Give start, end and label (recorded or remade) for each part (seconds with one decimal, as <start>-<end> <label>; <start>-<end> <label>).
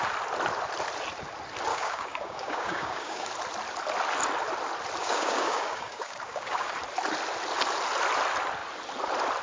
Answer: 0.0-1.7 recorded; 1.7-3.3 remade; 3.3-5.0 recorded; 5.0-6.8 remade; 6.8-9.4 recorded